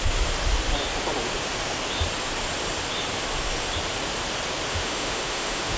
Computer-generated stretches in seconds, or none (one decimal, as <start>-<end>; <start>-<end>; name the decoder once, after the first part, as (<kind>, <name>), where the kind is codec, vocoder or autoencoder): 4.7-5.8 (autoencoder, DAC-VAE)